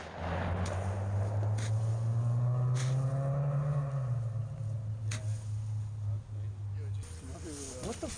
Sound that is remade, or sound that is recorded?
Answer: recorded